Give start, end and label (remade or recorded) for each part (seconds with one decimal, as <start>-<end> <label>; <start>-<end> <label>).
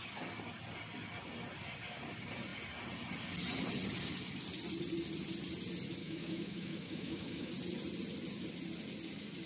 0.0-6.0 recorded; 6.0-7.5 remade; 7.5-9.5 recorded